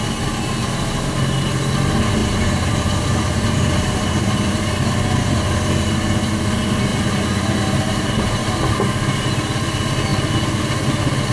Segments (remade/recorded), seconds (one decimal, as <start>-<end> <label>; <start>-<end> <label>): 0.0-2.2 recorded; 2.2-4.5 remade; 4.5-6.9 recorded; 6.9-8.4 remade; 8.4-11.3 recorded

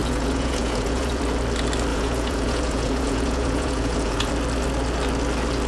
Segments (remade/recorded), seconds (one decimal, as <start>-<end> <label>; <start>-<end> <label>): 0.0-1.2 remade; 1.2-1.9 recorded; 1.9-4.3 remade; 4.3-5.7 recorded